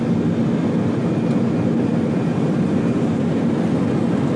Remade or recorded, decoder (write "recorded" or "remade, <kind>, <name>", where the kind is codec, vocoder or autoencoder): recorded